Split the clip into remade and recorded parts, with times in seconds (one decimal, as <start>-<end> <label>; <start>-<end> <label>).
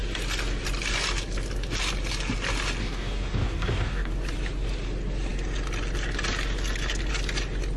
0.0-2.8 recorded; 2.8-4.1 remade; 4.1-7.8 recorded